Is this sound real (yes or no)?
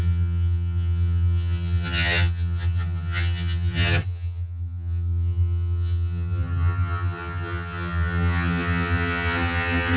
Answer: no